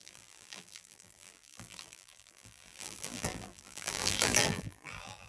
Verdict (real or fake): fake